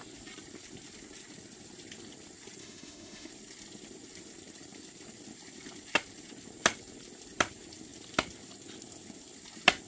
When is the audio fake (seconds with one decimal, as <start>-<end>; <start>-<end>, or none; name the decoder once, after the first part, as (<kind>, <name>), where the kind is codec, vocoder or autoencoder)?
2.6-3.3 (autoencoder, DAC-VAE)